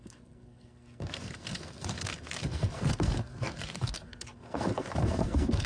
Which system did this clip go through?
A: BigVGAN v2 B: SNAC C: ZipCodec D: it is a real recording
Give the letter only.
B